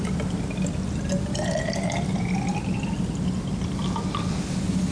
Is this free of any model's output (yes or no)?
yes